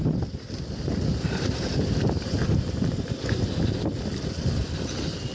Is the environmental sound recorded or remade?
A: remade